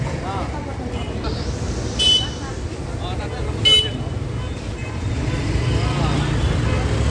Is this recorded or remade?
recorded